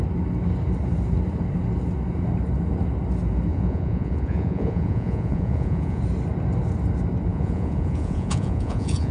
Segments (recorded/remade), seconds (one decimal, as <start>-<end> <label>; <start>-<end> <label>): 0.0-3.5 recorded; 3.5-6.0 remade; 6.0-7.3 recorded; 7.3-9.1 remade